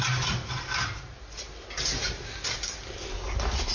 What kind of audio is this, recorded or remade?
recorded